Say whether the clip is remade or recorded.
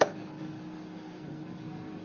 remade